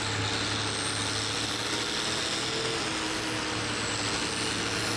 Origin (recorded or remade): recorded